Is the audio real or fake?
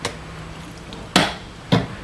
real